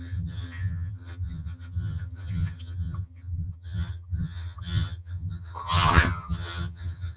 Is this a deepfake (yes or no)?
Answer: yes